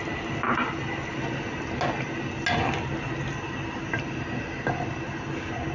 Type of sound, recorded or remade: recorded